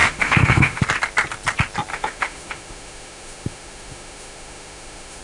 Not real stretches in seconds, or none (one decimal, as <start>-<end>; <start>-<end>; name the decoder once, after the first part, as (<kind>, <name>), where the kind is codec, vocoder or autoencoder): 0.0-0.8 (autoencoder, DAC-VAE); 1.9-5.2